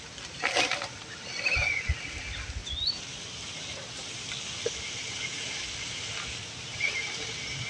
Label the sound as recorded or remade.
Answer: recorded